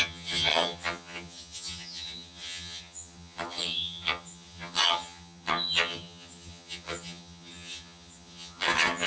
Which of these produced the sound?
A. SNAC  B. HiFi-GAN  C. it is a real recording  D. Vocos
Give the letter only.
B